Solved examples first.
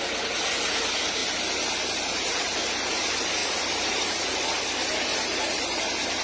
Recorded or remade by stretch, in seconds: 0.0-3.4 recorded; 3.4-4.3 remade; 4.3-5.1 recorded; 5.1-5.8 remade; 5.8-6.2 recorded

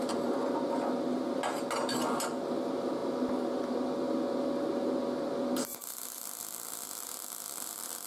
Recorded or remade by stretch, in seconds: 0.0-8.1 recorded

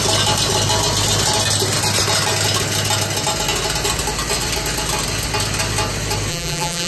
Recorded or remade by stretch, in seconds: 0.0-6.3 recorded; 6.3-6.9 remade

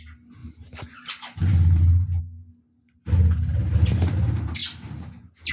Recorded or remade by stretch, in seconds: 0.0-0.4 recorded; 0.4-2.2 remade; 2.2-5.5 recorded

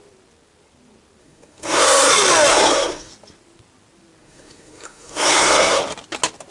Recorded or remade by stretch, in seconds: 0.0-1.2 recorded; 1.2-2.1 remade; 2.1-2.5 recorded; 2.5-3.1 remade; 3.1-4.2 recorded; 4.2-5.8 remade; 5.8-6.5 recorded

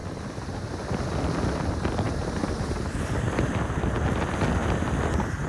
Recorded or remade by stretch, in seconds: 0.0-1.0 remade; 1.0-2.4 recorded; 2.4-3.0 remade; 3.0-5.5 recorded